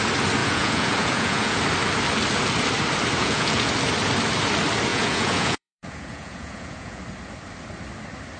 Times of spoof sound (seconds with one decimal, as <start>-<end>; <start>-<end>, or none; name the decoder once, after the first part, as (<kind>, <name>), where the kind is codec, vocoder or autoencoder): 0.4-1.6 (vocoder, Vocos); 3.2-3.7; 4.9-7.0